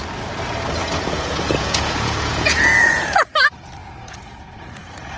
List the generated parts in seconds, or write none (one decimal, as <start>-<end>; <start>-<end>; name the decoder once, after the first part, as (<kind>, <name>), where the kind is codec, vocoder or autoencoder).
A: 0.8-3.2 (vocoder, Vocos); 3.8-5.2